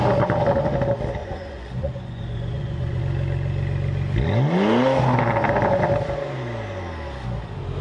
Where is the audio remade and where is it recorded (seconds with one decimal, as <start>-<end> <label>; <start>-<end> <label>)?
0.0-1.2 recorded; 1.2-3.0 remade; 3.0-7.8 recorded